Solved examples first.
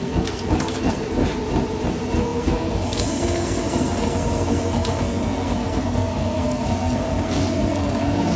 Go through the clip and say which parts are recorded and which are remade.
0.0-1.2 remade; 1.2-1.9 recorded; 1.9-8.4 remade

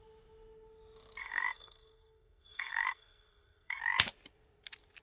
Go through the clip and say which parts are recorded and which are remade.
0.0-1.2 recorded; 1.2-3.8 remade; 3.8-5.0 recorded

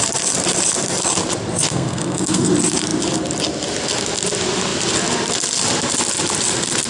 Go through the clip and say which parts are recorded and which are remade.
0.0-1.7 recorded; 1.7-2.5 remade; 2.5-6.9 recorded